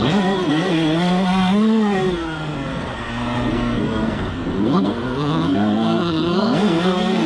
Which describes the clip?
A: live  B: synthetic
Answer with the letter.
B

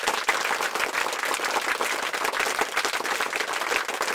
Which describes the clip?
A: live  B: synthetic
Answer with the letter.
A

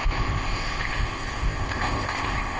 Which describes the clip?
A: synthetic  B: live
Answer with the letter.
A